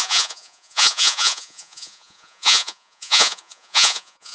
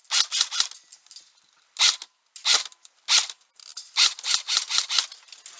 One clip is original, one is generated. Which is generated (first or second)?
first